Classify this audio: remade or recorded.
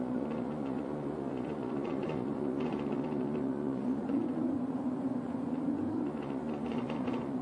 remade